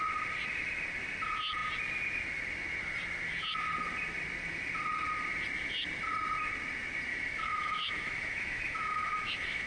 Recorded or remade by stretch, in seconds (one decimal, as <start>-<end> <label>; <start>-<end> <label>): 0.0-7.1 recorded; 7.1-9.7 remade